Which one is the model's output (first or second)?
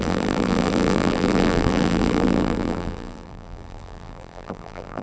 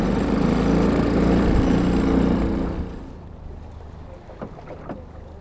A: first